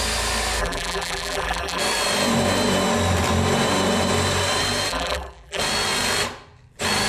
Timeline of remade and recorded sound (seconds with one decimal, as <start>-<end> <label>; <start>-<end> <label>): 0.0-0.6 recorded; 0.6-1.8 remade; 1.8-4.9 recorded; 4.9-5.6 remade; 5.6-7.1 recorded